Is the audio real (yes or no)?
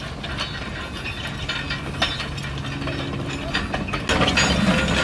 yes